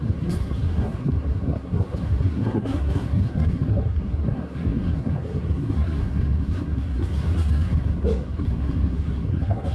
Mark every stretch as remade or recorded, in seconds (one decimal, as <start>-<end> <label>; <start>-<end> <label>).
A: 0.0-9.7 remade